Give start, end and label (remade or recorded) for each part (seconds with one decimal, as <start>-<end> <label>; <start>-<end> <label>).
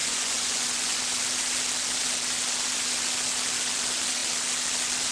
0.0-1.0 remade; 1.0-5.1 recorded